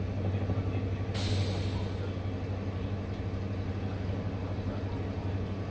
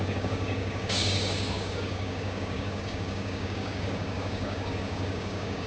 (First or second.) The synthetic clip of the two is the second